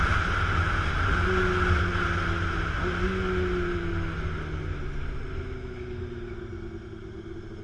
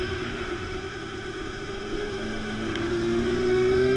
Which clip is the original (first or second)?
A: first